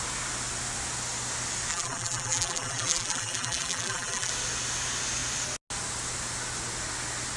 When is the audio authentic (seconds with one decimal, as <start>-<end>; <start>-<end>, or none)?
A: 0.0-1.7; 4.3-7.4